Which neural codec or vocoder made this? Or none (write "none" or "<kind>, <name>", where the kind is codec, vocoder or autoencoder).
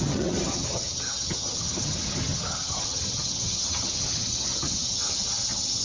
vocoder, HiFi-GAN